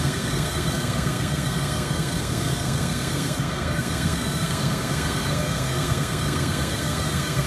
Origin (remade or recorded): remade